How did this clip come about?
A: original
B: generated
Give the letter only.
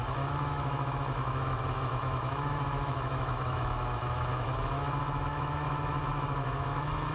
B